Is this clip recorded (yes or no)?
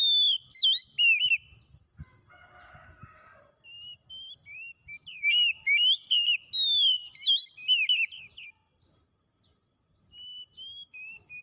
yes